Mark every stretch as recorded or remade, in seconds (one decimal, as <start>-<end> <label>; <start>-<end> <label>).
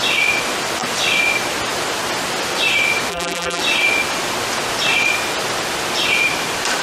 0.0-3.1 recorded; 3.1-3.6 remade; 3.6-6.8 recorded